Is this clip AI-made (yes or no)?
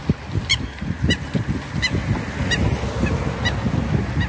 no